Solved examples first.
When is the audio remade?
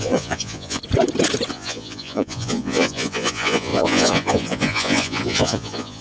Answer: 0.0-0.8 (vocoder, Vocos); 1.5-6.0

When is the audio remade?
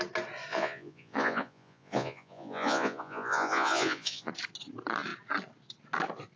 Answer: 0.5-4.3 (vocoder, Vocos)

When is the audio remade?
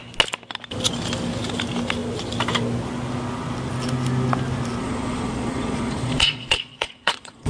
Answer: 4.8-7.5 (vocoder, Vocos)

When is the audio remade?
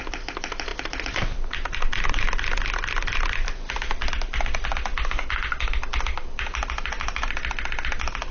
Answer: none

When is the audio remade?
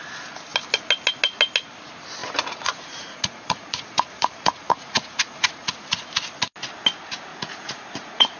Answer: 2.2-5.8 (vocoder, Vocos); 7.3-8.4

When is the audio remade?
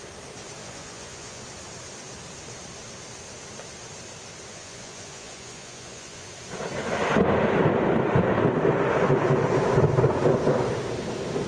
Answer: 0.6-1.4 (vocoder, Vocos); 4.5-6.3